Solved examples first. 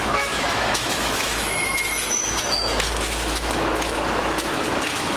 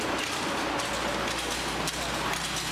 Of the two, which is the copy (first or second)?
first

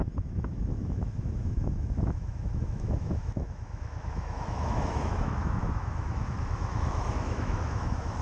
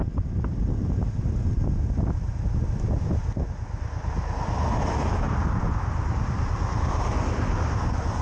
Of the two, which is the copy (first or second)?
first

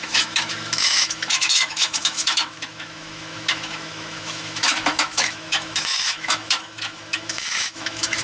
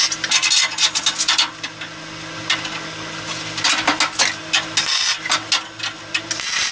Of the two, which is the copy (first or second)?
first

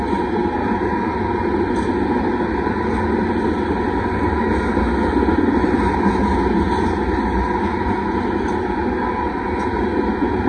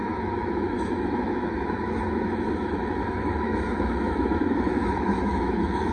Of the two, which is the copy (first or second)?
second